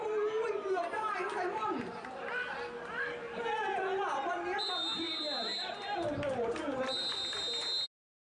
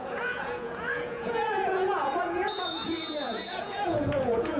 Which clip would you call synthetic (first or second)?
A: second